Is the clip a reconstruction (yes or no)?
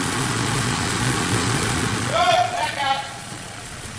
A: yes